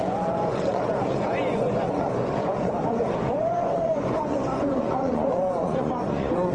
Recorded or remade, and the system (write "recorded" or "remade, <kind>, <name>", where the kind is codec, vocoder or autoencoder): remade, vocoder, Vocos